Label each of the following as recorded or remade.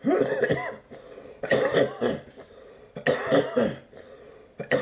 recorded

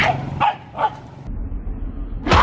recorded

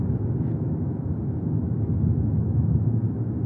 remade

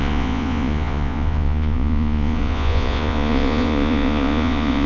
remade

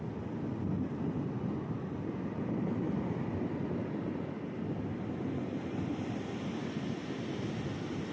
recorded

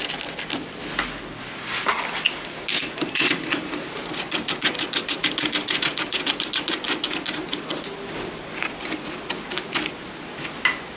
recorded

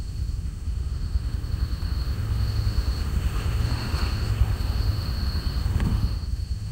remade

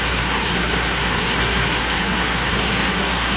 remade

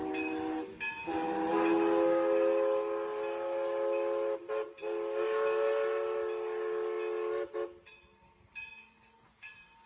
recorded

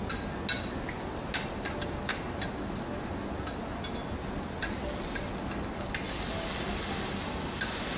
recorded